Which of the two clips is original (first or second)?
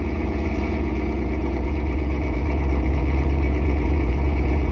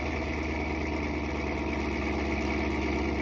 second